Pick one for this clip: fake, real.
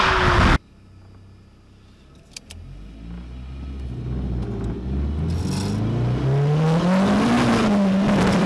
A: real